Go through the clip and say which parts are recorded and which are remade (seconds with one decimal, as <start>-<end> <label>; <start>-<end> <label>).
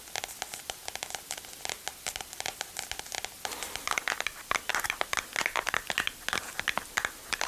0.0-7.5 recorded